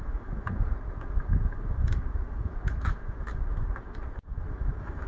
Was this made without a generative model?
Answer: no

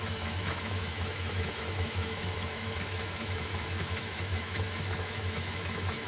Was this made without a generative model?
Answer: no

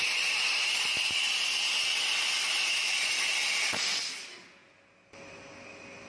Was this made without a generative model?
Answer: yes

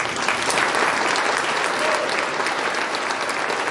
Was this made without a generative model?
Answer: yes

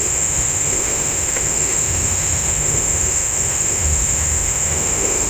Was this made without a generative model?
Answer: no